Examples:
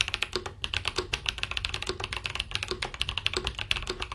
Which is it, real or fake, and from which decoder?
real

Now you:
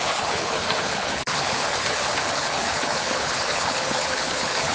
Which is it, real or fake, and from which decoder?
fake, codec, HILCodec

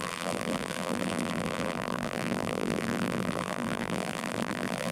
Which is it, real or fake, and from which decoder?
fake, vocoder, BigVGAN v2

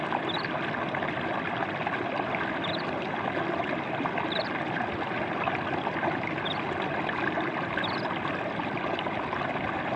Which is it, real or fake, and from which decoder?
real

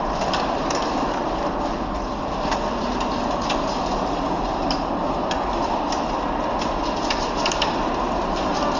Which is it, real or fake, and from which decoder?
real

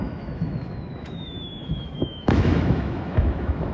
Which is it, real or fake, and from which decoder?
fake, autoencoder, DAC-VAE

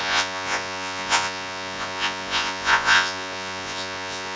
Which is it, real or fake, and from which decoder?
fake, vocoder, Vocos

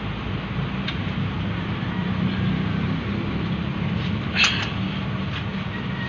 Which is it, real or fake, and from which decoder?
real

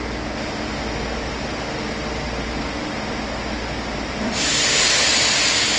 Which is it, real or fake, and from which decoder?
real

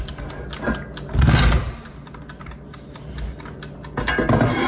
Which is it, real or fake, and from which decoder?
real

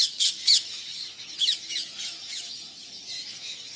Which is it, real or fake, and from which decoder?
fake, autoencoder, DAC-VAE